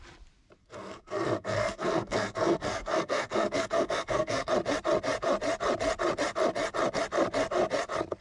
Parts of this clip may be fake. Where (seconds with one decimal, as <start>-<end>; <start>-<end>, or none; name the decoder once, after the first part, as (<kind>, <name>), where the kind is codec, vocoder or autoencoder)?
0.6-4.5 (codec, SNAC)